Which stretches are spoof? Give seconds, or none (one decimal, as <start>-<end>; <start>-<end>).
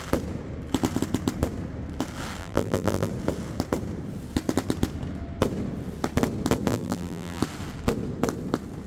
2.4-3.1; 6.7-7.4